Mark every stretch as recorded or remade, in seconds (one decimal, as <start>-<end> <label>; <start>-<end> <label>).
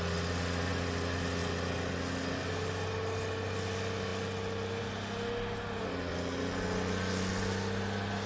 0.0-8.3 recorded